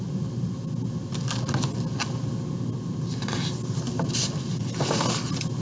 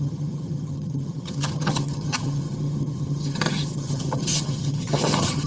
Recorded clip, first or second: first